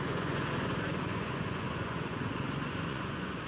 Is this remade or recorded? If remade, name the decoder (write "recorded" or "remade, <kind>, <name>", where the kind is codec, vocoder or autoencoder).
remade, vocoder, Vocos